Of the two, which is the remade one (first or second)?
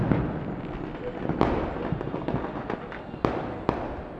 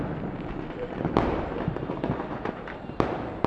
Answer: second